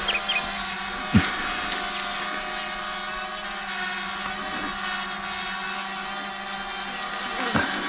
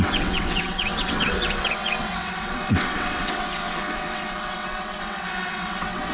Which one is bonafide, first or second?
first